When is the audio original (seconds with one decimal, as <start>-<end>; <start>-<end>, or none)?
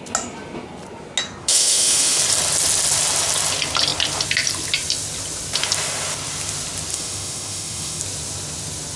0.0-1.4; 2.2-6.9; 8.0-9.0